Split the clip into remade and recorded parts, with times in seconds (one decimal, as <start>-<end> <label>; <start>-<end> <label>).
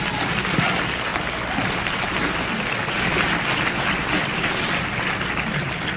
0.0-6.0 recorded